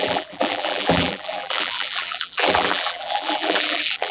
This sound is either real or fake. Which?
fake